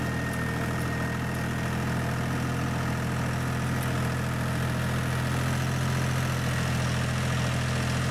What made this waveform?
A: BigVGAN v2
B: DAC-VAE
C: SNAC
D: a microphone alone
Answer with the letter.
D